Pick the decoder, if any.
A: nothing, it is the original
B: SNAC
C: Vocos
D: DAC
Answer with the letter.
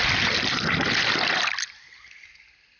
A